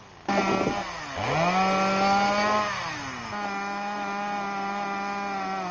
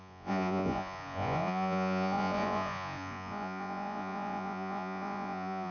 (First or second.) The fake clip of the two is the second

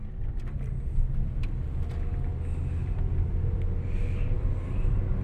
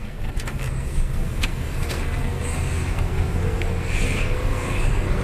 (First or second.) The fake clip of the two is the second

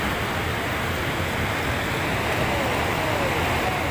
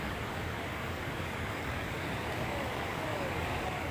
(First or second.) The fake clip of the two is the second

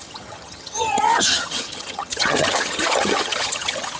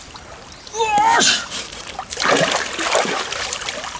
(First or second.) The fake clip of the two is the first